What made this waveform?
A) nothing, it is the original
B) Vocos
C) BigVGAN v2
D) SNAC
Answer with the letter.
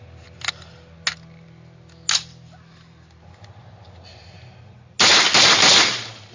A